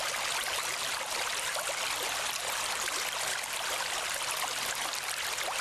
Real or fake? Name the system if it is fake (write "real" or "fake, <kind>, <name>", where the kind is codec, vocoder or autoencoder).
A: real